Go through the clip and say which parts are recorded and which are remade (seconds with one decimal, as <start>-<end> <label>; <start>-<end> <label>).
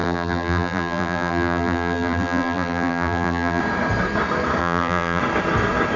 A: 0.0-3.6 remade; 3.6-4.6 recorded; 4.6-5.2 remade; 5.2-6.0 recorded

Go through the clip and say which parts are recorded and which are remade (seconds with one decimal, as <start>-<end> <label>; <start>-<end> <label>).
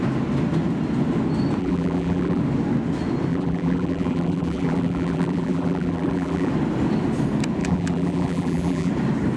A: 0.0-1.6 recorded; 1.6-2.4 remade; 2.4-3.3 recorded; 3.3-6.5 remade; 6.5-7.6 recorded; 7.6-8.9 remade; 8.9-9.4 recorded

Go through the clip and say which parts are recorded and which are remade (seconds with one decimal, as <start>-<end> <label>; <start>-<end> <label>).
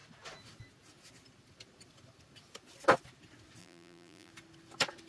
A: 0.0-3.6 recorded; 3.6-4.3 remade; 4.3-5.1 recorded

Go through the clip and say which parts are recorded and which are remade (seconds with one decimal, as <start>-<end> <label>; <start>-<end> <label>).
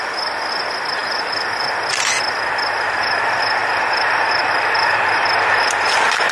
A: 0.0-3.6 recorded; 3.6-5.5 remade; 5.5-6.3 recorded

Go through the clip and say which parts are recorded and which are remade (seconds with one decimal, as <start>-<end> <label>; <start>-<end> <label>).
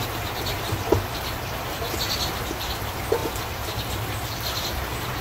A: 0.0-5.2 recorded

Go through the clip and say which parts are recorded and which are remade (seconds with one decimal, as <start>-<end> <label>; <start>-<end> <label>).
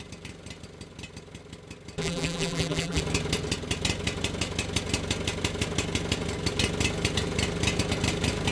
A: 0.0-2.0 recorded; 2.0-3.0 remade; 3.0-8.5 recorded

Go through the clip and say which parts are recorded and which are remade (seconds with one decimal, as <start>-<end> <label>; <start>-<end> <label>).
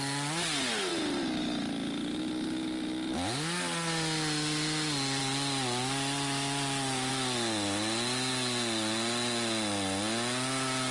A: 0.0-0.9 recorded; 0.9-2.2 remade; 2.2-5.2 recorded; 5.2-7.1 remade; 7.1-10.9 recorded